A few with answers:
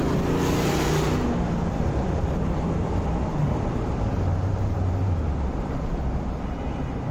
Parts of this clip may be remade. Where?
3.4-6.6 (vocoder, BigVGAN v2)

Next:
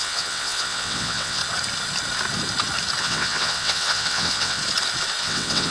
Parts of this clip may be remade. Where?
0.0-1.4 (vocoder, WaveNeXt); 3.0-4.6; 5.2-5.7

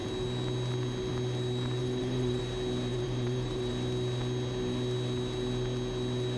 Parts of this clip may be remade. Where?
1.8-2.4 (vocoder, BigVGAN v2); 2.9-3.7

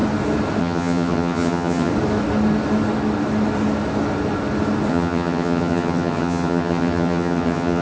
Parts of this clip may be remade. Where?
0.6-1.9 (vocoder, HiFi-GAN); 4.9-7.8

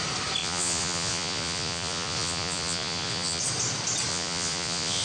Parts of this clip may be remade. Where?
0.4-3.4 (vocoder, Vocos); 4.1-5.0

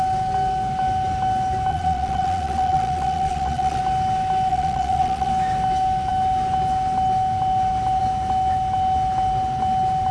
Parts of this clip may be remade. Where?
1.7-3.8 (vocoder, Vocos); 4.5-5.3

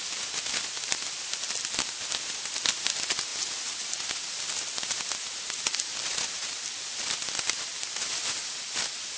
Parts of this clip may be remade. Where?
none